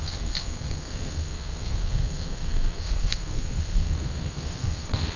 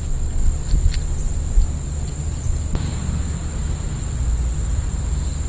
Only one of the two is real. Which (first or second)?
second